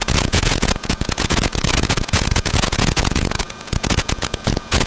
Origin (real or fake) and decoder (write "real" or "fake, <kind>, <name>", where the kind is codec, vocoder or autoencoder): fake, vocoder, Vocos